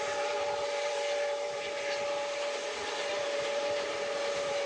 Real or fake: real